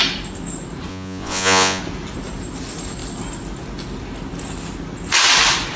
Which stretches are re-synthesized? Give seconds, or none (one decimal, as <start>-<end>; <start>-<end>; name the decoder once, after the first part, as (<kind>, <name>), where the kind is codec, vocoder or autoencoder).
0.9-1.8 (vocoder, Vocos)